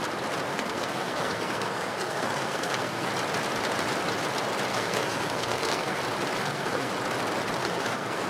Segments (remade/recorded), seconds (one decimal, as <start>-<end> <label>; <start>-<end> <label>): 0.0-0.5 recorded; 0.5-3.1 remade; 3.1-4.7 recorded; 4.7-6.0 remade; 6.0-6.4 recorded; 6.4-6.9 remade; 6.9-7.6 recorded; 7.6-8.3 remade